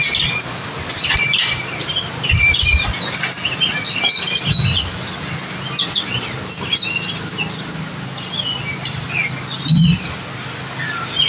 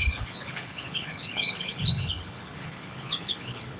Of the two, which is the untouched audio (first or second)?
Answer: first